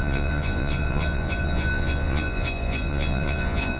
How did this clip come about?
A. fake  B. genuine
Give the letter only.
A